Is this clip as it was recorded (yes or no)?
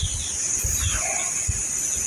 yes